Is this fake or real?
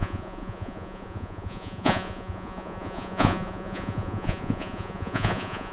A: fake